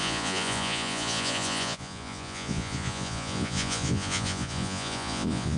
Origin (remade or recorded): remade